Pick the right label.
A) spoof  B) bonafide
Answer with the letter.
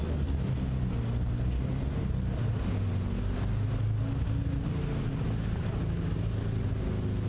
B